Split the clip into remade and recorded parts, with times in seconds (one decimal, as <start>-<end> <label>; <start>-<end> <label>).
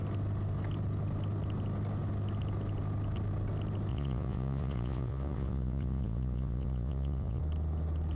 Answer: 0.0-3.9 recorded; 3.9-7.4 remade; 7.4-8.2 recorded